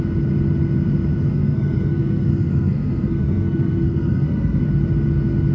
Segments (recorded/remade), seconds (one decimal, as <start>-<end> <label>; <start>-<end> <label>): 0.0-1.3 recorded; 1.3-4.6 remade; 4.6-5.5 recorded